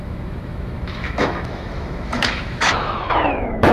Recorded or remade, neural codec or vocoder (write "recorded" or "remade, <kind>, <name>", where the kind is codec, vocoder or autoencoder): remade, autoencoder, DAC-VAE